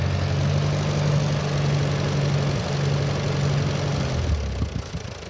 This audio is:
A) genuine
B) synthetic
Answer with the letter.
A